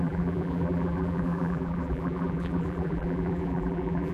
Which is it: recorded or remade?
remade